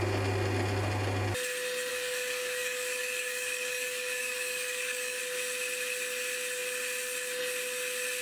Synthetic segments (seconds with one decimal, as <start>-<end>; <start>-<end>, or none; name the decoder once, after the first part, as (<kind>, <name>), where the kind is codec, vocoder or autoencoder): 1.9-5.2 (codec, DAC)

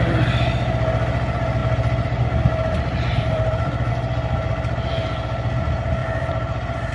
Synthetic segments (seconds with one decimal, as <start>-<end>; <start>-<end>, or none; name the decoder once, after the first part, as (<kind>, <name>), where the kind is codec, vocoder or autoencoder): 1.6-3.9 (vocoder, BigVGAN v2); 6.0-6.9

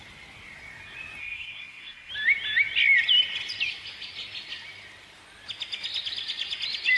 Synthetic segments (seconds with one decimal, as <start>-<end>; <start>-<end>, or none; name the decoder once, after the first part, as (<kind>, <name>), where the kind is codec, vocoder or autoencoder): 1.2-2.1 (codec, SNAC)

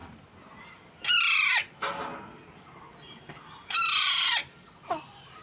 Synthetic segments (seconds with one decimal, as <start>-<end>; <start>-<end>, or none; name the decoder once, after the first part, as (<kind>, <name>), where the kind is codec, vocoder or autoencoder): none